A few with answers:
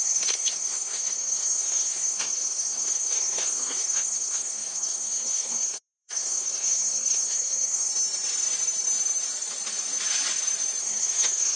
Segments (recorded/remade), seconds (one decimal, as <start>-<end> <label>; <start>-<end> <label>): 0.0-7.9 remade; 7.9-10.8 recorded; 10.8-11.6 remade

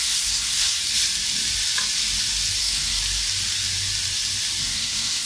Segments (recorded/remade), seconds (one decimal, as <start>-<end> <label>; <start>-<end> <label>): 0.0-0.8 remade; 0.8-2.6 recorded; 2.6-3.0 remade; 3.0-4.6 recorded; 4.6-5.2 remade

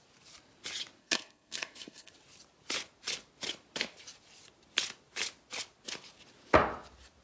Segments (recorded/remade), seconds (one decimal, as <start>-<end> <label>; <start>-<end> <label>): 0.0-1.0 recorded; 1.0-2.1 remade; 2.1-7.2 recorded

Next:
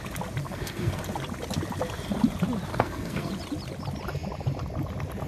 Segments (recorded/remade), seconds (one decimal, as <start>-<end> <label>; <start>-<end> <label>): 0.0-0.4 recorded; 0.4-1.0 remade; 1.0-2.7 recorded; 2.7-3.3 remade; 3.3-5.3 recorded

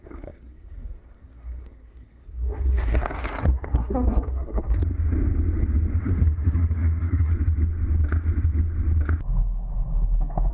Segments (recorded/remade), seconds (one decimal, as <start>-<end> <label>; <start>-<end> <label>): 0.0-4.9 remade; 4.9-6.0 recorded; 6.0-7.3 remade; 7.3-10.5 recorded